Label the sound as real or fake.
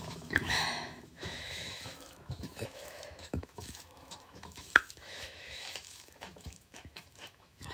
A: fake